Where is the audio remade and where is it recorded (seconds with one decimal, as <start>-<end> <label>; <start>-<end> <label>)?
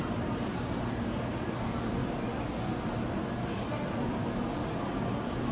0.0-0.6 remade; 0.6-5.5 recorded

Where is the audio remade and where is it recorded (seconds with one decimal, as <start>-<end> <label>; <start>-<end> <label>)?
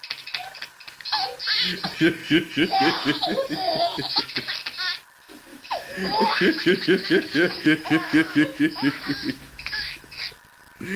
0.0-2.2 recorded; 2.2-4.2 remade; 4.2-5.5 recorded; 5.5-10.2 remade; 10.2-11.0 recorded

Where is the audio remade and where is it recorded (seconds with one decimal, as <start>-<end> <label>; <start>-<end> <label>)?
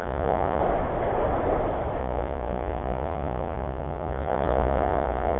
0.0-0.6 remade; 0.6-2.0 recorded; 2.0-5.4 remade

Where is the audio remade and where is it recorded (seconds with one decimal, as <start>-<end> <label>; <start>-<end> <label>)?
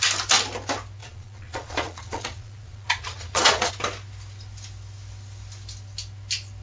0.0-1.0 recorded; 1.0-3.7 remade; 3.7-6.6 recorded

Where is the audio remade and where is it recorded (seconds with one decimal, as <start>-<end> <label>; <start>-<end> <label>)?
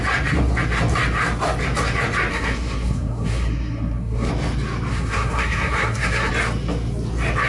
0.0-2.3 recorded; 2.3-4.3 remade; 4.3-4.9 recorded; 4.9-6.3 remade; 6.3-7.5 recorded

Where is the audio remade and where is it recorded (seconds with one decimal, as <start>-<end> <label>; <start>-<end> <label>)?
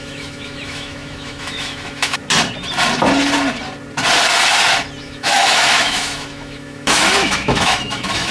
0.0-2.2 remade; 2.2-5.0 recorded; 5.0-8.3 remade